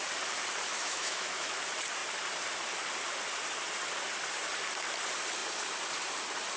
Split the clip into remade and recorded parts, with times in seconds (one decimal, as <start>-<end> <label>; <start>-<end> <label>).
0.0-0.7 recorded; 0.7-1.6 remade; 1.6-6.6 recorded